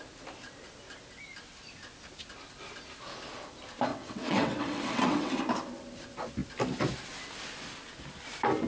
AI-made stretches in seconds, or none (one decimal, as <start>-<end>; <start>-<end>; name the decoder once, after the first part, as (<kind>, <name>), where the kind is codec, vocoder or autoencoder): 3.9-5.4 (vocoder, WaveNeXt)